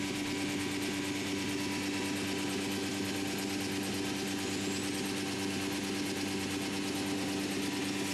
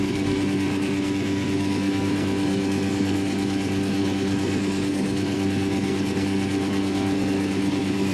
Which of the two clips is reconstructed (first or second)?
second